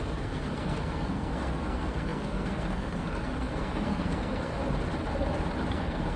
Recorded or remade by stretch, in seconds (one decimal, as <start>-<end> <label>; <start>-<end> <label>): 0.0-4.6 remade; 4.6-5.7 recorded; 5.7-6.2 remade